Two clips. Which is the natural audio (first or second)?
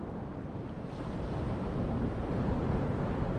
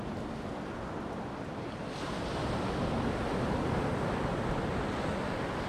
second